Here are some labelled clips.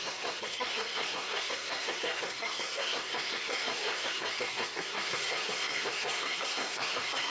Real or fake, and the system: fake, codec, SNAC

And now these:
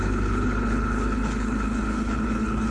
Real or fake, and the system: fake, codec, HILCodec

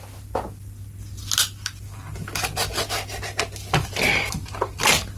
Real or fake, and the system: real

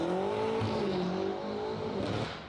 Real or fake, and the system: real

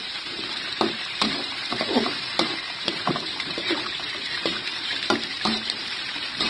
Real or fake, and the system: fake, vocoder, BigVGAN v2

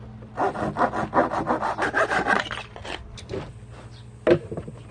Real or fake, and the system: real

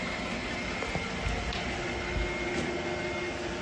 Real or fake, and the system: real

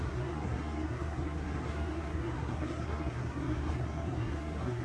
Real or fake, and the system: fake, codec, SNAC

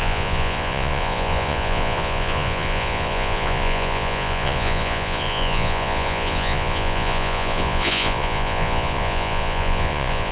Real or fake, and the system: fake, vocoder, Vocos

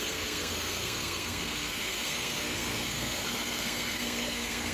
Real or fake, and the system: fake, codec, SNAC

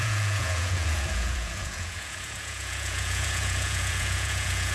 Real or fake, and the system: fake, vocoder, Vocos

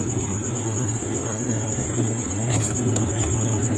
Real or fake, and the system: fake, codec, SNAC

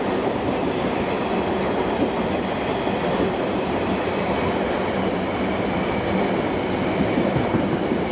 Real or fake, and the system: real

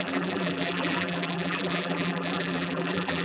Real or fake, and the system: fake, vocoder, BigVGAN v2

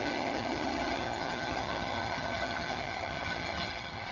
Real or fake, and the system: fake, vocoder, HiFi-GAN